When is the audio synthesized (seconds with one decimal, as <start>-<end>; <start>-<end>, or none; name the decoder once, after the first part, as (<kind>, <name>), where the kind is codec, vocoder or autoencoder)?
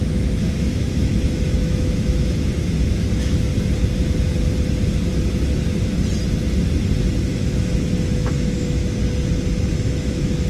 0.0-3.5 (autoencoder, DAC-VAE); 7.2-8.8; 9.7-10.5